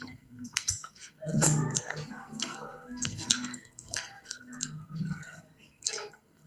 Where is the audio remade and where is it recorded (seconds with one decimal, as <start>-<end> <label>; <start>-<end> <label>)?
0.0-6.5 remade